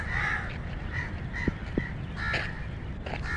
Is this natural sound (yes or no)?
yes